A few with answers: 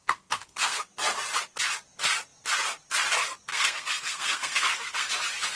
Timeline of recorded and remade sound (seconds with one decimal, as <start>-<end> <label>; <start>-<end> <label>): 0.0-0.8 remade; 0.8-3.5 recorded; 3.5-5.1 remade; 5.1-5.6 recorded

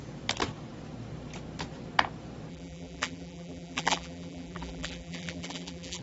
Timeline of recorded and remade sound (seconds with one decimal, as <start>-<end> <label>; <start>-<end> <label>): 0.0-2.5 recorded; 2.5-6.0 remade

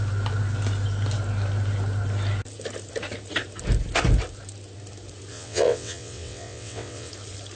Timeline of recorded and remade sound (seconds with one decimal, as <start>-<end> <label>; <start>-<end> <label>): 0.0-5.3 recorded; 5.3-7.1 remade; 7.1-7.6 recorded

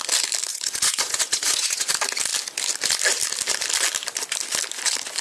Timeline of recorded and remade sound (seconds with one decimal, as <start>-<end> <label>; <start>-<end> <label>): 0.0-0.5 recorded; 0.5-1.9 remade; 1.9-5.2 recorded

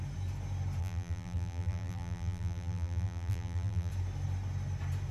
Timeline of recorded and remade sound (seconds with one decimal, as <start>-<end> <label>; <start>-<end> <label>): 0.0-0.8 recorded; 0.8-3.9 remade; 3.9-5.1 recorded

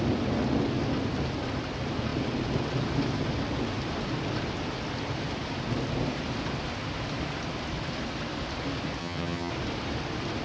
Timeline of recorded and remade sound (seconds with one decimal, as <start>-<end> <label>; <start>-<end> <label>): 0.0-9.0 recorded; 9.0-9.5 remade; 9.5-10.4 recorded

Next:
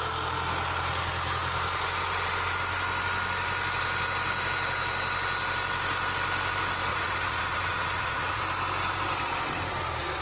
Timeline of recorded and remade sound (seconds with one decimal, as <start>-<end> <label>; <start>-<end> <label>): 0.0-6.9 recorded; 6.9-8.4 remade; 8.4-10.2 recorded